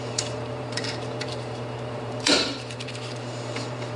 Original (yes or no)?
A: no